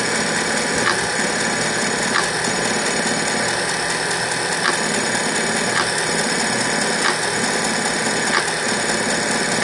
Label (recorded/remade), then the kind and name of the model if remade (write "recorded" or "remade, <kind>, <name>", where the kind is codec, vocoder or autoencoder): recorded